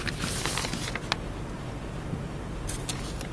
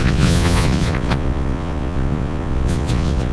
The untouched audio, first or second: first